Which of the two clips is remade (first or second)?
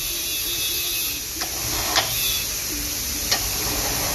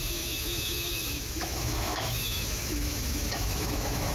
second